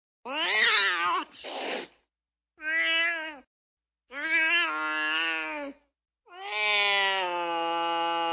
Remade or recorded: recorded